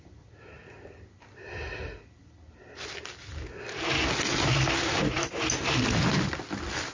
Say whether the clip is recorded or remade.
recorded